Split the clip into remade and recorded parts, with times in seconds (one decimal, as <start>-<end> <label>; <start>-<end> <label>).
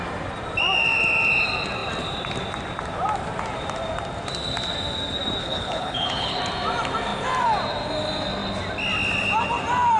0.0-5.4 recorded; 5.4-6.4 remade; 6.4-10.0 recorded